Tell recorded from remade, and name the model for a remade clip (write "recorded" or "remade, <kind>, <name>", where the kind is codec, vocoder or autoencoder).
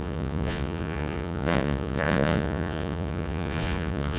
remade, vocoder, Vocos